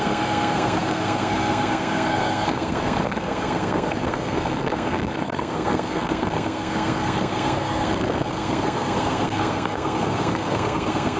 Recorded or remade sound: remade